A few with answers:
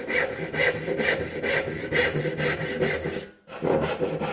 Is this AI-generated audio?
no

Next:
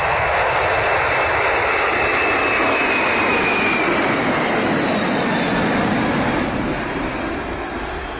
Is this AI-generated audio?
no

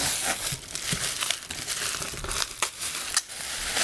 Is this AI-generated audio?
no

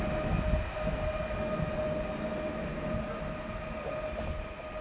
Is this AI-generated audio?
no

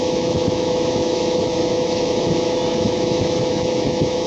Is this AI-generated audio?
yes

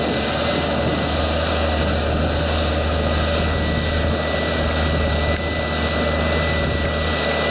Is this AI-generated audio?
no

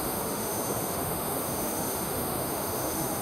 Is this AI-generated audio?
yes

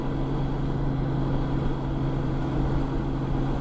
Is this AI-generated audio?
no